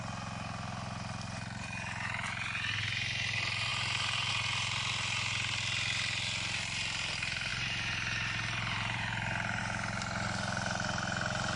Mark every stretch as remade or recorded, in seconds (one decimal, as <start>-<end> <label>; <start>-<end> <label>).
0.0-3.7 recorded; 3.7-4.3 remade; 4.3-7.5 recorded; 7.5-9.6 remade; 9.6-11.6 recorded